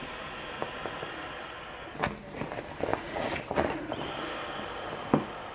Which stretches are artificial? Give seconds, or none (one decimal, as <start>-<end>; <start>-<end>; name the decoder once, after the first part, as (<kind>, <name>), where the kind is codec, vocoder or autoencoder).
2.9-4.0 (vocoder, Vocos)

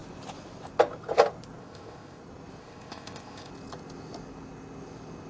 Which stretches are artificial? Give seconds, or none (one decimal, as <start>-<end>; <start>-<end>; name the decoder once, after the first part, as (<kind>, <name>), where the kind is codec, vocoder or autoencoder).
1.6-2.2 (codec, ZipCodec); 2.6-3.5

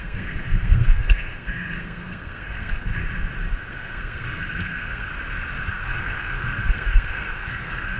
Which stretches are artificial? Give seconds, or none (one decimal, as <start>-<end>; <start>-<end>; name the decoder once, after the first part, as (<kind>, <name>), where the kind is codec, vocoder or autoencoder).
0.0-2.9 (codec, SNAC); 3.7-5.1; 5.7-8.0

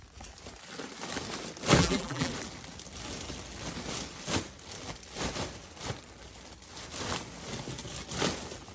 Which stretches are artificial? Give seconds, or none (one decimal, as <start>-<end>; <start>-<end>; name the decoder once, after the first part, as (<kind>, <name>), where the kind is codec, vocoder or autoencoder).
1.8-2.3 (vocoder, BigVGAN v2)

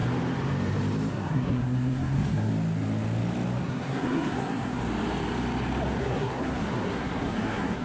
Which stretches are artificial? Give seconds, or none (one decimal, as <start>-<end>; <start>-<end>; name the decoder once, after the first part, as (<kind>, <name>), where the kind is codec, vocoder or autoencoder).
1.1-2.5 (codec, SNAC); 3.6-4.8; 6.0-7.8